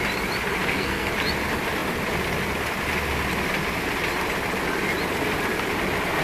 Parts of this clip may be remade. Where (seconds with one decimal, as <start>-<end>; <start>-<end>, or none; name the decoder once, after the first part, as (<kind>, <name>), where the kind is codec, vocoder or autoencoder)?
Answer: 0.5-1.1 (codec, SNAC)